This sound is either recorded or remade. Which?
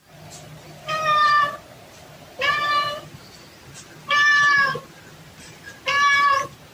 recorded